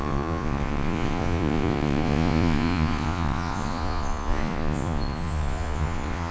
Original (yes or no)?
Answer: no